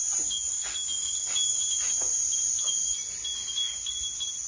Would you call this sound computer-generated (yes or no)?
no